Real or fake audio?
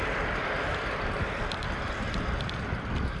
fake